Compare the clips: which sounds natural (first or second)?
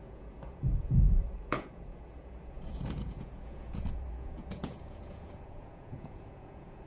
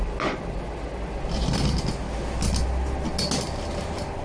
second